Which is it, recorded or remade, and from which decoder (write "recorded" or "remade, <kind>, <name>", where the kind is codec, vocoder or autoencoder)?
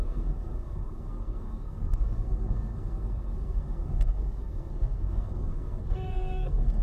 remade, codec, SNAC